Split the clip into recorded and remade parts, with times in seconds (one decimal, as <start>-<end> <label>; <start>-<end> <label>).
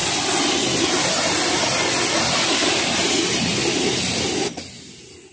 0.0-5.3 recorded